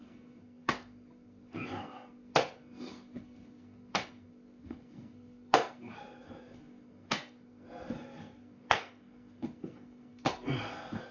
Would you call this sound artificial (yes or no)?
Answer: yes